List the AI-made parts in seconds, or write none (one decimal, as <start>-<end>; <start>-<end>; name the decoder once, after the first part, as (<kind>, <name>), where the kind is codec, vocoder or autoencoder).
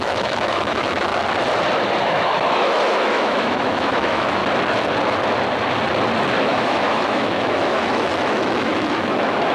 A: 0.0-1.1 (autoencoder, DAC-VAE); 2.0-4.4; 6.4-9.5